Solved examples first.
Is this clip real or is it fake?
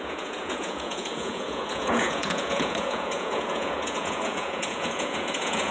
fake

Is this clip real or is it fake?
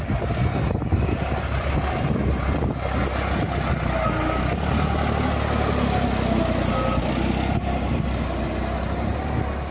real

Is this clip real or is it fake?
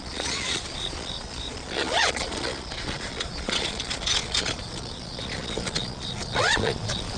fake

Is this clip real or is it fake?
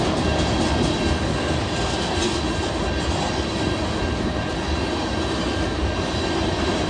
real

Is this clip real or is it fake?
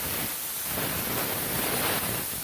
real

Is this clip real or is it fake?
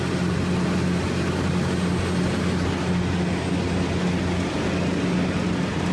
real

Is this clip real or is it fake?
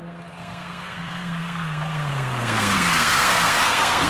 fake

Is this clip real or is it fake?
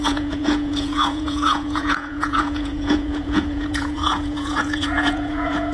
fake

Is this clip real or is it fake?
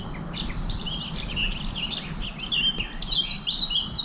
real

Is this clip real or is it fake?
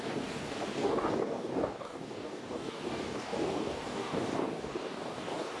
fake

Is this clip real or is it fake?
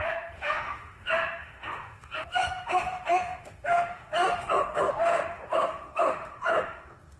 fake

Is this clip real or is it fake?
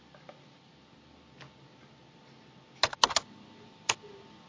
real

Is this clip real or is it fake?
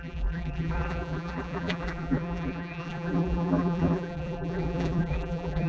fake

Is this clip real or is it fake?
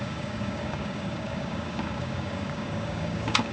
fake